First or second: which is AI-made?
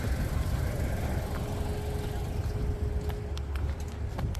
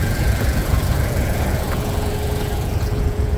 second